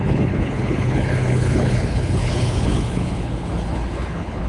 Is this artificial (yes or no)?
yes